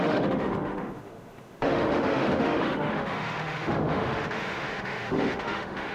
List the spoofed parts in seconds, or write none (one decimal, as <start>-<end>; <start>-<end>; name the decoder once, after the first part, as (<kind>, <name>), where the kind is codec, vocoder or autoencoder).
0.0-5.9 (autoencoder, DAC-VAE)